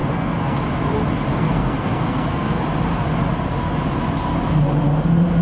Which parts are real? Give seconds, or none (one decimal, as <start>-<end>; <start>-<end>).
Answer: 0.6-1.3; 2.6-5.4

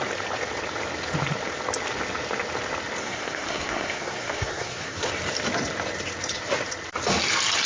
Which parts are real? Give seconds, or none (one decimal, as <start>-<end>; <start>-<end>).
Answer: 0.0-3.0; 5.1-7.7

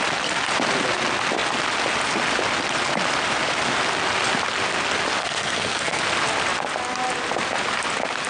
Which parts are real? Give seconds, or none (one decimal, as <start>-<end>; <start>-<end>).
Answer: 0.0-5.2; 6.0-8.3

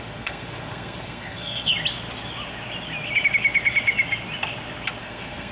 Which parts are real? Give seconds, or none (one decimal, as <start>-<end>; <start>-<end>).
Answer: 1.7-5.0